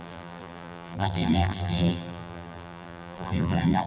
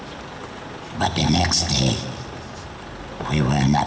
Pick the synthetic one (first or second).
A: first